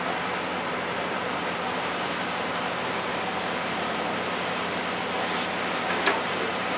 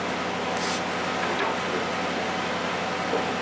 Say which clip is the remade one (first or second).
first